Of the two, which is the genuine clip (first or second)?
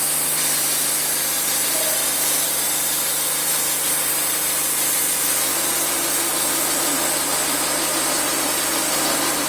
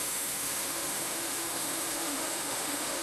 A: first